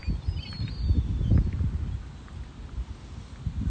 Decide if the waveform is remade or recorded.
recorded